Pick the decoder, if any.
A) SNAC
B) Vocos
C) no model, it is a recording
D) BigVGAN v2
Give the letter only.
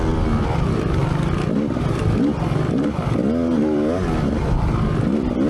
C